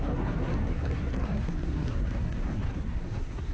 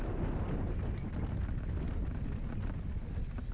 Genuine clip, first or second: second